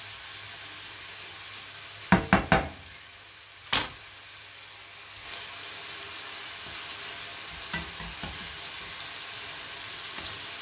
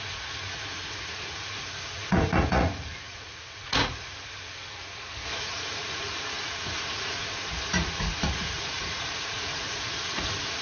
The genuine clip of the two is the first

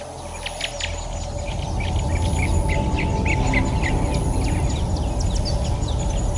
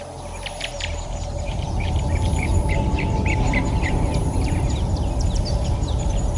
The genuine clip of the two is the first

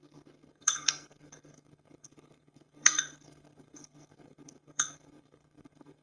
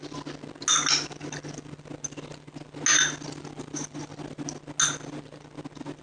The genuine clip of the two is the second